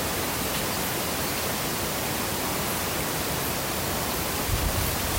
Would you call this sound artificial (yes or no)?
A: no